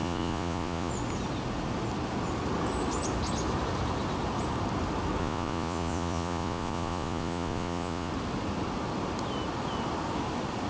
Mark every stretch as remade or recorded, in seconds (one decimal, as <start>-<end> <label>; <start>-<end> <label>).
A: 0.0-0.9 remade; 0.9-5.2 recorded; 5.2-8.1 remade; 8.1-10.7 recorded